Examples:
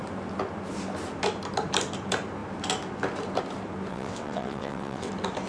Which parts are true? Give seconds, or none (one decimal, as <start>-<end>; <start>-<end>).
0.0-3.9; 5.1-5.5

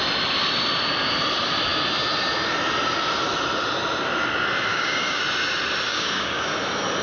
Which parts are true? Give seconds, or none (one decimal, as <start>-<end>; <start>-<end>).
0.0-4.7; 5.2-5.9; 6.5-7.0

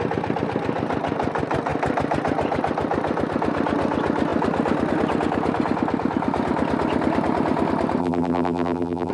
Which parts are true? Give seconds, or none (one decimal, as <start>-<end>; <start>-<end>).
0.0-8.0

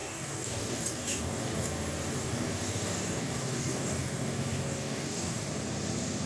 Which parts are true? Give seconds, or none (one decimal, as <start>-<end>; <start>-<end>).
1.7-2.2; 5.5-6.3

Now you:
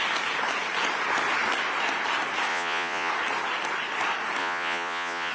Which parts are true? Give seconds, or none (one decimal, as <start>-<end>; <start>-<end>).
0.0-2.5; 3.1-4.4

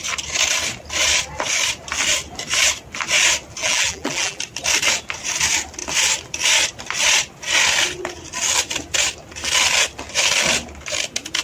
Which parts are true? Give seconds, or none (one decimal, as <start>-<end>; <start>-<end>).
0.0-3.6; 4.4-11.4